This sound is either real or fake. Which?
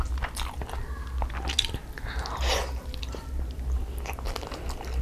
real